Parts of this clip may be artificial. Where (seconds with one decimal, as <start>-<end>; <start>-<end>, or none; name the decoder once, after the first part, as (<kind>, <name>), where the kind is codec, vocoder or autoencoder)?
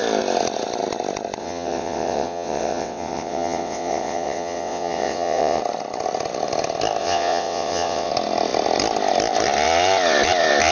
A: 1.4-5.6 (vocoder, WaveNeXt); 7.0-8.1